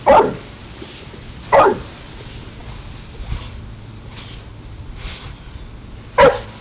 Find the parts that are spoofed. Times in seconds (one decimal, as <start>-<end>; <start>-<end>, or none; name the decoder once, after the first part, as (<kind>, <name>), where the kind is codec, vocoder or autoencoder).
0.6-1.1 (vocoder, BigVGAN v2); 1.7-2.2